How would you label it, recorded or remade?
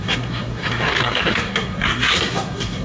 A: remade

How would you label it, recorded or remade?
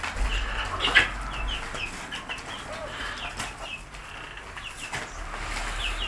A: recorded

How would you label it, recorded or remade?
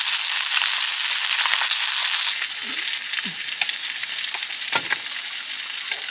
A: recorded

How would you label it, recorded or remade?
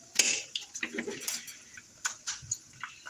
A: recorded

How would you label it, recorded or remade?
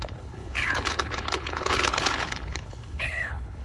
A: remade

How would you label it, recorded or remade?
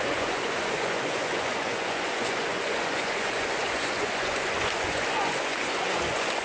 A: remade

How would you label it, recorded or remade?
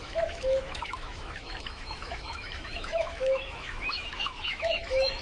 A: remade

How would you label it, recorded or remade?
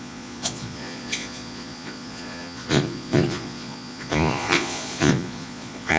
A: remade